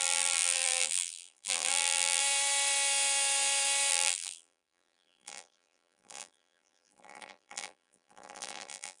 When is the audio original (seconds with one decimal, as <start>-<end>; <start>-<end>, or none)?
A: 2.2-3.9